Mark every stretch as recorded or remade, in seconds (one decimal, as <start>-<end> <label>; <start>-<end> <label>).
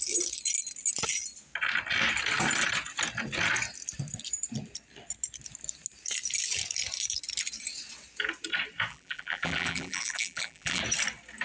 0.0-8.9 recorded; 8.9-10.8 remade; 10.8-11.4 recorded